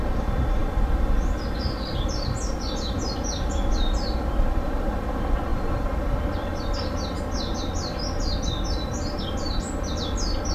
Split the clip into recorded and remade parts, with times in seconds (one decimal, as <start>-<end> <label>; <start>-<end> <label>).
0.0-10.5 recorded